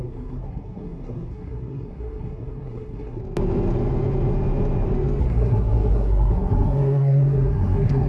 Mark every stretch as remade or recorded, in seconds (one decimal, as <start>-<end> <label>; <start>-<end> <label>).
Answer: 0.0-3.2 remade; 3.2-5.2 recorded; 5.2-8.1 remade